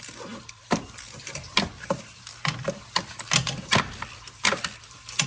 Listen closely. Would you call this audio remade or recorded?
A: remade